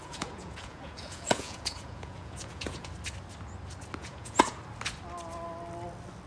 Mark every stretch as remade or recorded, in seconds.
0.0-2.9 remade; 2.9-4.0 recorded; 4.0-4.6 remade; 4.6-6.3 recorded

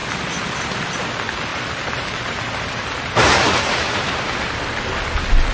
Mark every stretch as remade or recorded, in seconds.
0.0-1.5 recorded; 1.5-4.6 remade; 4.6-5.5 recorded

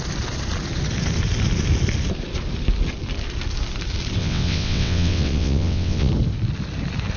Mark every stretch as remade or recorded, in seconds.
0.0-4.2 recorded; 4.2-6.1 remade; 6.1-7.2 recorded

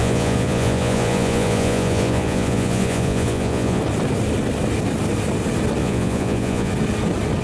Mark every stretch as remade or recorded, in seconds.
0.0-3.8 remade; 3.8-5.8 recorded; 5.8-6.7 remade; 6.7-7.4 recorded

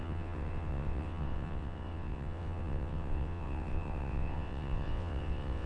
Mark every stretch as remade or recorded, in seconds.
0.0-5.7 remade

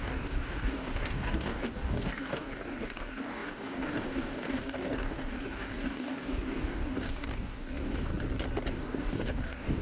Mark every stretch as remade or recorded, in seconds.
0.0-8.1 remade; 8.1-8.7 recorded; 8.7-9.8 remade